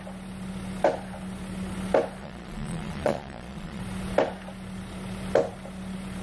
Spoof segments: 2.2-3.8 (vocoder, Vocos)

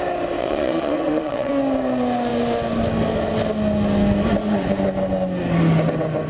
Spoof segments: 0.4-1.5 (vocoder, Vocos)

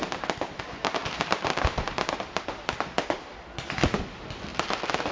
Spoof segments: 1.0-4.1 (vocoder, BigVGAN v2); 4.5-5.1